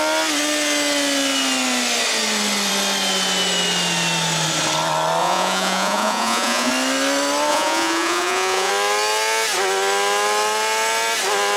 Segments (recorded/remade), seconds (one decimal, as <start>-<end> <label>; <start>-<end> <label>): 0.0-5.2 recorded; 5.2-6.7 remade; 6.7-7.5 recorded; 7.5-8.7 remade; 8.7-11.6 recorded